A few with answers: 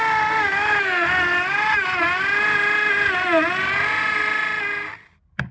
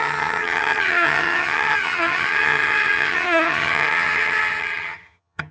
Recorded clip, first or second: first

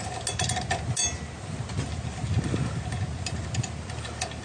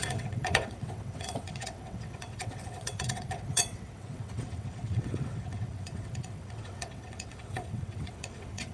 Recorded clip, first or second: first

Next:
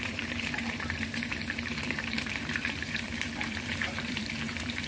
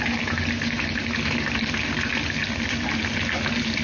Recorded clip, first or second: second